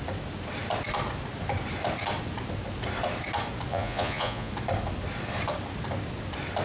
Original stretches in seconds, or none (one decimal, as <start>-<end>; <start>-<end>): 0.0-3.7; 4.5-6.6